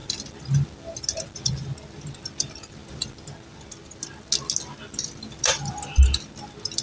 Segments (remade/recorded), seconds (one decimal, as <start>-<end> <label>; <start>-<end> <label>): 0.0-6.8 recorded